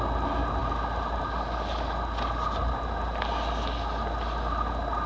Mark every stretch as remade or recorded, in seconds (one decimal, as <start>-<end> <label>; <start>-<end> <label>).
0.0-5.1 recorded